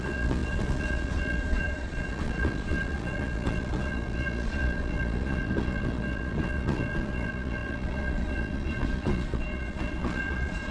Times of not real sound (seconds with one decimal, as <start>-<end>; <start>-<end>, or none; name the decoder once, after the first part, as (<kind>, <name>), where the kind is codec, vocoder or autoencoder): 0.0-10.7 (vocoder, Vocos)